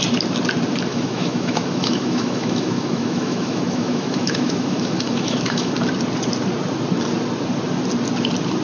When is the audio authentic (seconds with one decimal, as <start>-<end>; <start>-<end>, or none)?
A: 0.0-0.9; 5.7-8.6